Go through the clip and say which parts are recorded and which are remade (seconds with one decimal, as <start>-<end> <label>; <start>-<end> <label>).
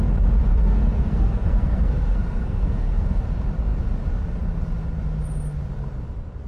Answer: 0.0-0.5 recorded; 0.5-3.2 remade; 3.2-6.5 recorded